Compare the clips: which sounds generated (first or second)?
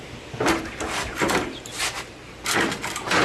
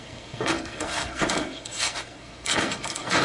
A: second